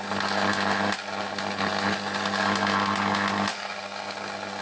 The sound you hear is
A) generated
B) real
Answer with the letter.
B